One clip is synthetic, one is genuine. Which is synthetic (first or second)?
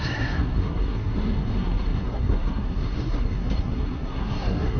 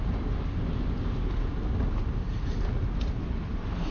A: first